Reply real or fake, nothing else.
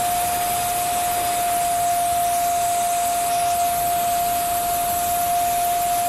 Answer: real